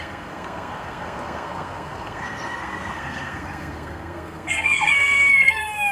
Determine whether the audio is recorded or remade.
remade